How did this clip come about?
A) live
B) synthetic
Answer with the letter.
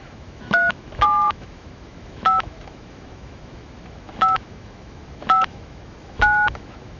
B